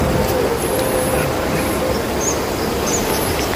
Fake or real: real